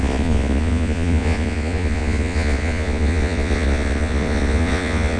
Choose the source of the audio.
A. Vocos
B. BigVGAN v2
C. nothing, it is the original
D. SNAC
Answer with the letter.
A